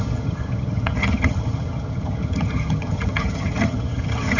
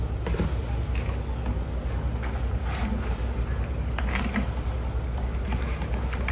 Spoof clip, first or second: first